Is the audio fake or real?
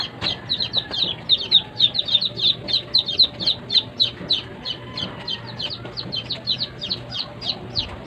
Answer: real